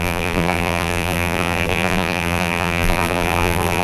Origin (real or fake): fake